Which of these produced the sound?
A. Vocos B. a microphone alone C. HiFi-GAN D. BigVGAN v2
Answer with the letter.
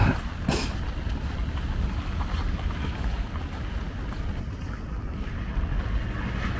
B